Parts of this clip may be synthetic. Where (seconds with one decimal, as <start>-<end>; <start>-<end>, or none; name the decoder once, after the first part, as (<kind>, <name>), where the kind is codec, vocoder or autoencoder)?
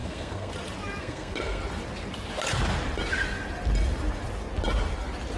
0.0-0.5 (codec, SNAC); 1.0-1.6